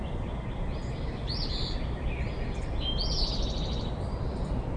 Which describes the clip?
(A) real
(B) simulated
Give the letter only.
A